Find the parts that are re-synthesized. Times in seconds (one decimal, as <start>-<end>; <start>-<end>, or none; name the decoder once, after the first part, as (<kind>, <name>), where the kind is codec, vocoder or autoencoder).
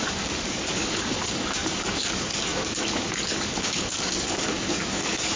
0.0-5.4 (codec, DAC)